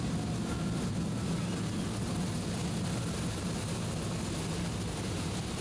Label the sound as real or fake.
real